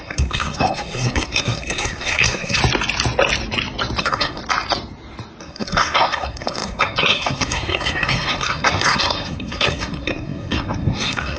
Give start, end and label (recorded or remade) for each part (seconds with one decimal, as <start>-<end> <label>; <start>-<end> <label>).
0.0-2.6 remade; 2.6-4.0 recorded; 4.0-4.4 remade; 4.4-5.4 recorded; 5.4-11.4 remade